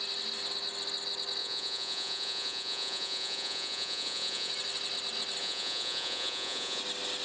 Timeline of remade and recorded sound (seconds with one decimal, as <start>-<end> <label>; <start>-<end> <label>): 0.0-1.4 recorded; 1.4-4.5 remade; 4.5-5.4 recorded; 5.4-6.8 remade; 6.8-7.2 recorded